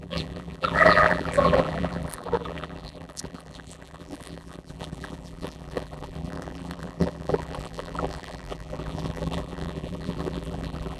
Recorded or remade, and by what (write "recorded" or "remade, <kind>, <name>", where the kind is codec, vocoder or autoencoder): remade, vocoder, BigVGAN v2